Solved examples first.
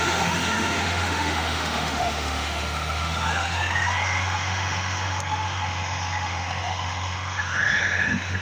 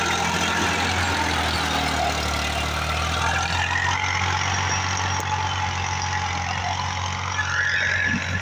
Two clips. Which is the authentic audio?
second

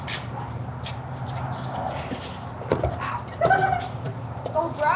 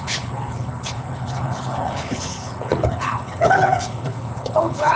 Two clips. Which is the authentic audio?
first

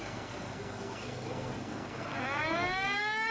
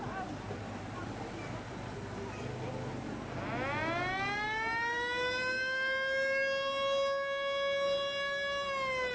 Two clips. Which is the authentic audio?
second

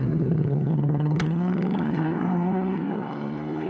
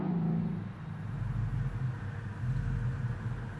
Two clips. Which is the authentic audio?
second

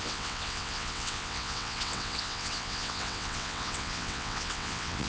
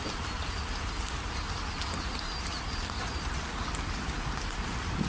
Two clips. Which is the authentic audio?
second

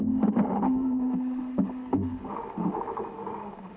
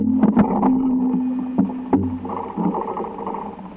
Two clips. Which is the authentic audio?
second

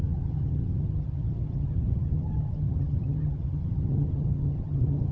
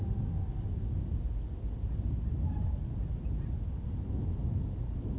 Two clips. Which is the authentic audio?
second